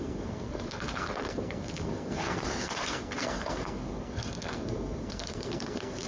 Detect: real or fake fake